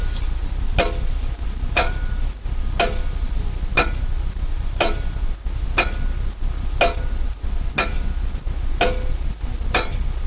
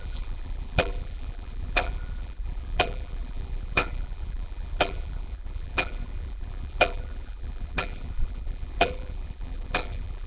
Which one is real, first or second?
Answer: first